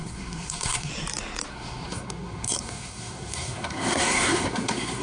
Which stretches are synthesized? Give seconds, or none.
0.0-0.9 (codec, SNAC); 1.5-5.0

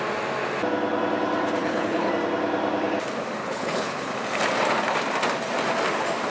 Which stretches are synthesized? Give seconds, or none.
1.6-2.1 (codec, HILCodec); 3.4-4.1

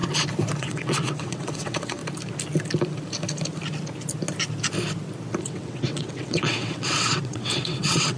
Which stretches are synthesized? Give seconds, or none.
0.6-2.0 (vocoder, WaveNeXt); 5.4-8.2

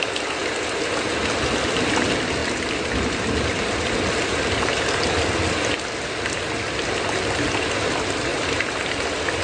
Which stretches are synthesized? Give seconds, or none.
none

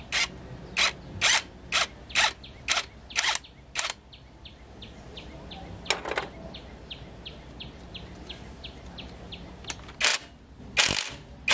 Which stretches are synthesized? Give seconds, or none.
none

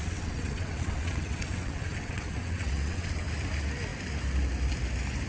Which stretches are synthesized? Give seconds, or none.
0.0-3.2 (vocoder, WaveNeXt)